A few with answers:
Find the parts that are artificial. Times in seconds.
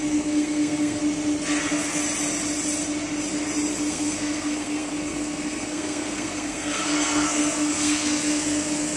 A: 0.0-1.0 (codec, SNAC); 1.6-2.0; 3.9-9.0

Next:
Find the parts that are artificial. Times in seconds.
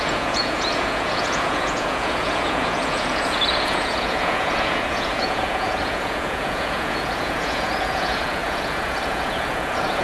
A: 0.0-10.0 (vocoder, Vocos)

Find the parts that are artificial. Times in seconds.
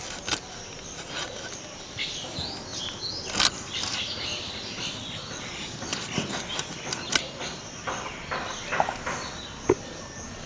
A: none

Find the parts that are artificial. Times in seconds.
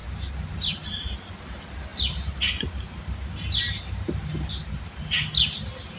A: none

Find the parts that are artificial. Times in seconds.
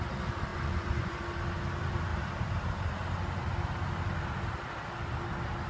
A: 0.5-1.2 (vocoder, Vocos)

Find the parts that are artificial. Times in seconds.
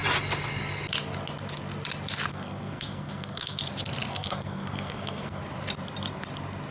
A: 2.3-3.6 (codec, SNAC); 4.1-5.4